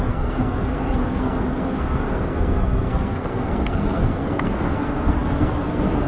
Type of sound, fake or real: fake